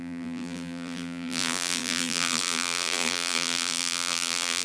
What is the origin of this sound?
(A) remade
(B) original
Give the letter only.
A